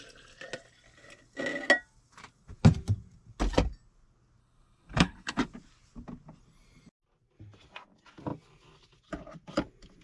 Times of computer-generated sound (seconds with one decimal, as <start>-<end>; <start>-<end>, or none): 4.4-5.4

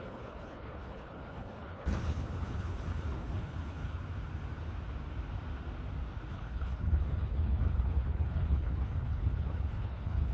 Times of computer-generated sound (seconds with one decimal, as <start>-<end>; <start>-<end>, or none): 0.0-4.0; 6.3-10.3